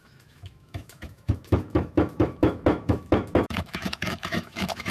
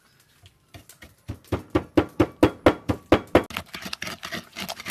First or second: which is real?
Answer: second